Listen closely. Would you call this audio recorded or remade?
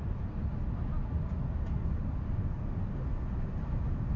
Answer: recorded